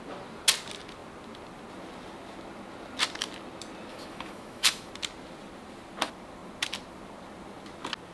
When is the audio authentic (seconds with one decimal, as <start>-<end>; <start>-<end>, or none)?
0.0-3.9; 4.9-8.1